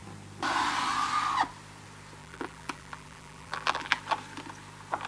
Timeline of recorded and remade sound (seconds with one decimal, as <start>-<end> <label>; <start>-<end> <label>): 0.0-2.2 recorded; 2.2-4.0 remade; 4.0-5.1 recorded